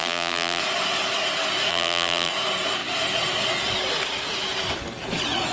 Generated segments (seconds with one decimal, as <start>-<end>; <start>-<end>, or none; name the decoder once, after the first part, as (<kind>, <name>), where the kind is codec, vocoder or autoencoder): 0.0-0.6 (vocoder, BigVGAN v2); 1.7-2.3

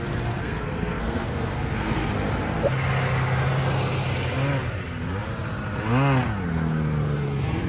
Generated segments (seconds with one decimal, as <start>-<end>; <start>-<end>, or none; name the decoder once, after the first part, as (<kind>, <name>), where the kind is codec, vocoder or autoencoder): 0.4-2.1 (codec, SNAC)

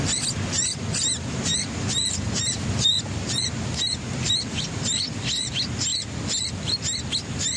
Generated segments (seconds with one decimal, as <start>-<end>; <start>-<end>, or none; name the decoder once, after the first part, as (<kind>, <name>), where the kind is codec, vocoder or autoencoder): 1.5-5.5 (vocoder, BigVGAN v2); 5.9-6.8

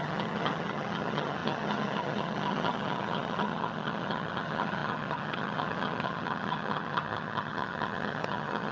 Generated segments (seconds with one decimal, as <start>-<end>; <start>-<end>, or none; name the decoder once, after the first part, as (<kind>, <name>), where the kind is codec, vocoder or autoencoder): 0.0-8.7 (vocoder, HiFi-GAN)